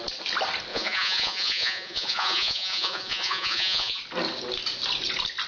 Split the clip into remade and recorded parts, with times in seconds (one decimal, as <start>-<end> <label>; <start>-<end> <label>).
0.0-0.7 recorded; 0.7-4.0 remade; 4.0-5.5 recorded